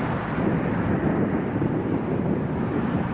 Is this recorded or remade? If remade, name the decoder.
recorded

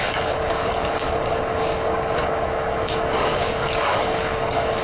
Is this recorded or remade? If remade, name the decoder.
remade, codec, DAC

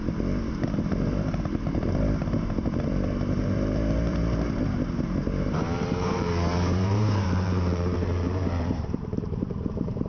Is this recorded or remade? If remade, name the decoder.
remade, vocoder, BigVGAN v2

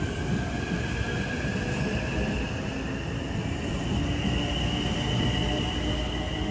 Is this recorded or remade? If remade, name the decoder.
recorded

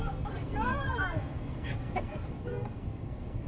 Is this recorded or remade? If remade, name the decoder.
remade, codec, SNAC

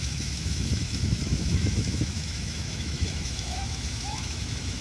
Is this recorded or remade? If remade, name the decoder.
remade, autoencoder, DAC-VAE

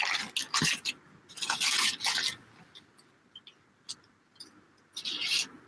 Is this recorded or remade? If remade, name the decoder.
recorded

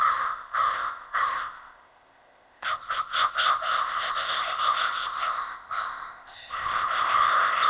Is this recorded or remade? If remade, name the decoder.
remade, codec, ZipCodec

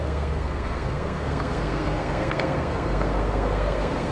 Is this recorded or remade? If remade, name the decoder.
remade, codec, SNAC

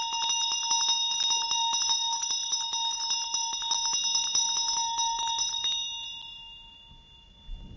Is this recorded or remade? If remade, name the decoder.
recorded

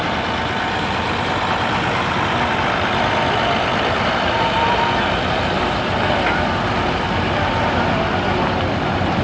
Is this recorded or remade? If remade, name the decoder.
recorded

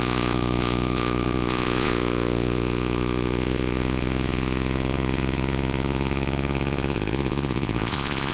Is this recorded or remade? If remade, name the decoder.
remade, vocoder, Vocos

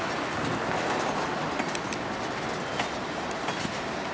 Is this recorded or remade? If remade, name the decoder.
recorded